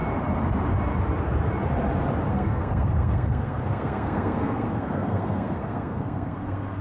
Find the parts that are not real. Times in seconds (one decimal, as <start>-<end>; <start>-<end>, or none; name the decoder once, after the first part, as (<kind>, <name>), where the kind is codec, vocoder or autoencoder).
2.3-6.8 (codec, SNAC)